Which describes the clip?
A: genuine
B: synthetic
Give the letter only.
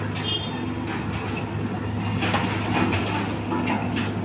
A